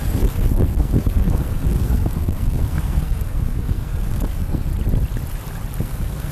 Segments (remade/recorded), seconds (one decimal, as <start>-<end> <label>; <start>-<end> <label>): 0.0-4.7 remade; 4.7-5.8 recorded; 5.8-6.3 remade